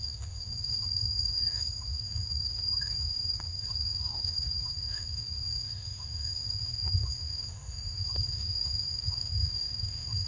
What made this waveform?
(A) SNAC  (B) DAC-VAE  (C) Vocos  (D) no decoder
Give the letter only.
B